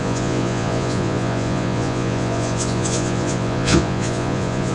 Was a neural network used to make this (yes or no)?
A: yes